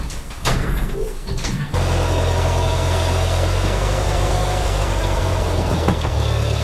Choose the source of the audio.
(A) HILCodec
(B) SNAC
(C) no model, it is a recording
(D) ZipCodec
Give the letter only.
B